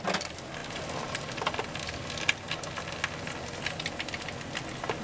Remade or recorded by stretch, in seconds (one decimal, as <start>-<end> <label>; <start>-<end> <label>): 0.0-5.0 recorded